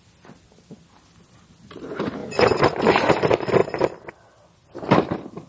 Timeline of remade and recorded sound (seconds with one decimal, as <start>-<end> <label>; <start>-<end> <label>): 0.0-5.5 recorded